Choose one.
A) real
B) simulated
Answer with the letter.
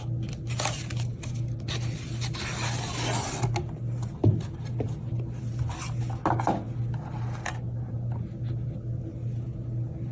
A